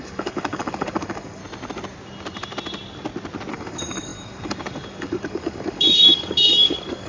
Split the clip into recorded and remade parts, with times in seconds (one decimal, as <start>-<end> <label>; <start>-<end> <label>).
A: 0.0-1.4 remade; 1.4-3.5 recorded; 3.5-7.1 remade